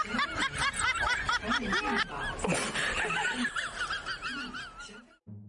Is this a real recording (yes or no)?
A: yes